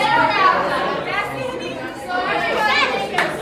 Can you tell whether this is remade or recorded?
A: recorded